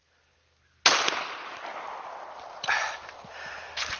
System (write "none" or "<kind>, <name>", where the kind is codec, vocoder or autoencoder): none